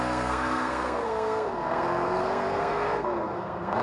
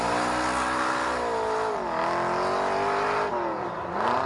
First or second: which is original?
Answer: second